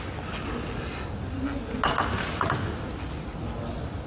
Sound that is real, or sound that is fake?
real